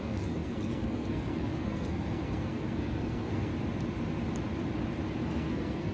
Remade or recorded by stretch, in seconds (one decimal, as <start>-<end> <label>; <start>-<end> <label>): 0.0-3.5 remade; 3.5-5.2 recorded; 5.2-5.9 remade